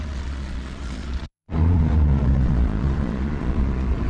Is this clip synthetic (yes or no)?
yes